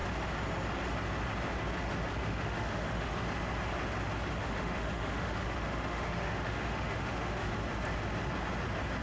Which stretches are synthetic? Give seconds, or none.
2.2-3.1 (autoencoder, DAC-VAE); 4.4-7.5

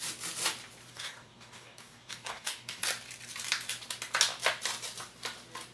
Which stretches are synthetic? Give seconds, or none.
0.9-2.8 (codec, DAC)

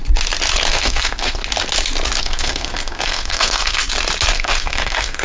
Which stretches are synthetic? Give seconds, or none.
0.7-1.4 (codec, SNAC); 2.2-3.8; 4.3-5.2

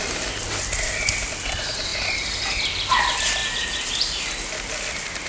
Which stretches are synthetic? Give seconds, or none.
none